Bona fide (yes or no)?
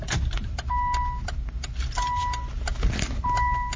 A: yes